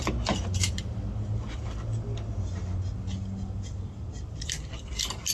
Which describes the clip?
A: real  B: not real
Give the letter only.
A